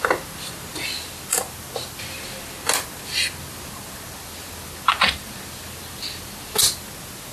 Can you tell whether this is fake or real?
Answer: real